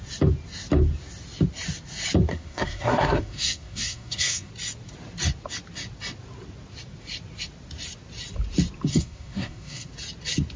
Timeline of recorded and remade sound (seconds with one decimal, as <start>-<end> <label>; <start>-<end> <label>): 0.0-2.3 recorded; 2.3-4.5 remade; 4.5-8.9 recorded; 8.9-9.9 remade; 9.9-10.6 recorded